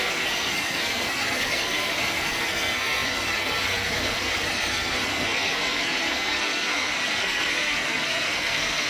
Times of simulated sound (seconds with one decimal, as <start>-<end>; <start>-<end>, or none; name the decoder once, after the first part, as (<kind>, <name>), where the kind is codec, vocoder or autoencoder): 0.0-8.9 (codec, SNAC)